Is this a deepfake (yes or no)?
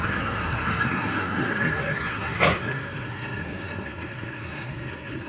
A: yes